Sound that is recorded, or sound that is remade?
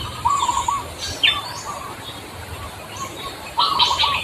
remade